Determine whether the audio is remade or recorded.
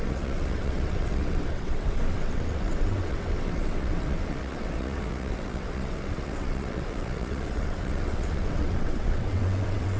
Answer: remade